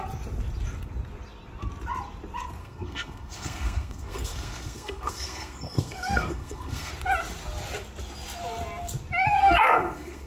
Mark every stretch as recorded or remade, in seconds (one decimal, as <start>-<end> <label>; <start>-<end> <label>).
0.0-2.6 recorded; 2.6-6.9 remade; 6.9-9.4 recorded; 9.4-10.3 remade